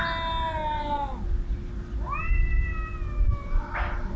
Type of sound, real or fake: real